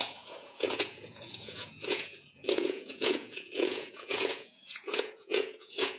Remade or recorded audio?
remade